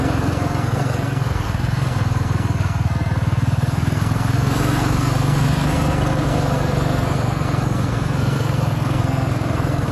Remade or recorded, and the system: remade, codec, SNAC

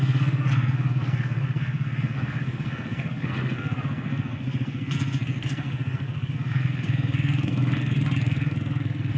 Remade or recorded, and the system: remade, codec, SNAC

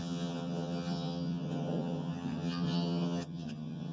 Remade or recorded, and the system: remade, vocoder, HiFi-GAN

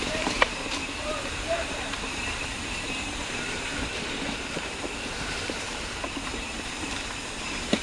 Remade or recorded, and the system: remade, vocoder, BigVGAN v2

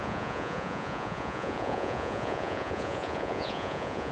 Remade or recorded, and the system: remade, vocoder, Vocos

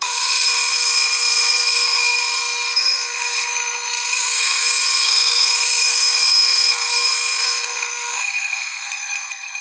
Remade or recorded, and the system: remade, codec, SNAC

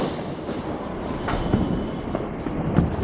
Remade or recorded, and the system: recorded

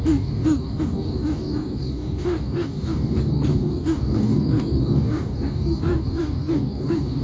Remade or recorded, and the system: remade, codec, DAC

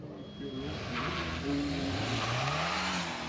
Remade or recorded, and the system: recorded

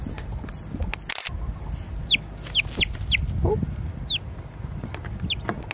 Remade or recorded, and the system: recorded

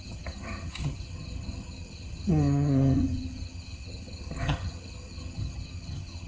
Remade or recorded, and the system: remade, vocoder, HiFi-GAN